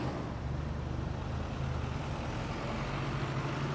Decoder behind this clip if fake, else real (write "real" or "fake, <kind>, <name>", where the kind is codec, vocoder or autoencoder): real